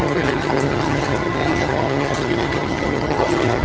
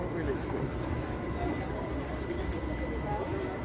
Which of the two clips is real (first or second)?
second